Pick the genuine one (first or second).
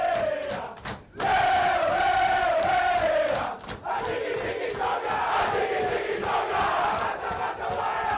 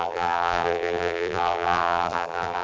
first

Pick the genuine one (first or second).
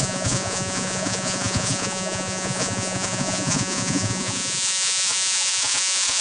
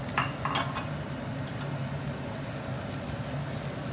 second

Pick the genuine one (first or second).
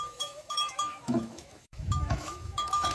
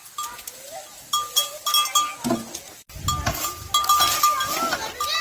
second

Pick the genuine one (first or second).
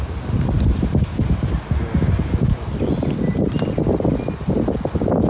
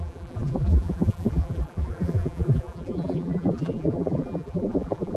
first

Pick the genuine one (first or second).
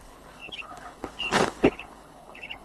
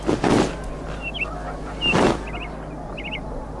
second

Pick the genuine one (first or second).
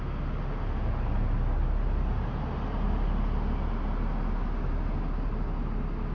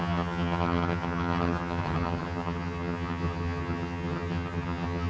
first